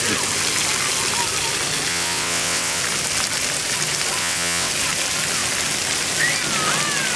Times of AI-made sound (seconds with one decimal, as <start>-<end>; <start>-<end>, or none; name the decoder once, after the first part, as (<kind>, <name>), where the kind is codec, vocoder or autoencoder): 1.9-2.8 (vocoder, WaveNeXt); 4.2-4.7